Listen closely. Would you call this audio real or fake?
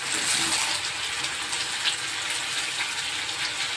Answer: real